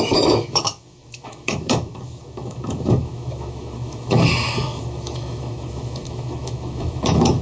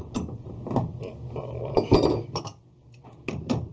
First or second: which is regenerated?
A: first